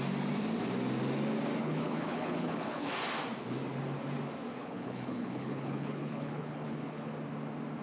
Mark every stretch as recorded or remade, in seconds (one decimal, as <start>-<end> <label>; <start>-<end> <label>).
0.0-1.6 recorded; 1.6-2.9 remade; 2.9-4.6 recorded; 4.6-7.1 remade; 7.1-7.8 recorded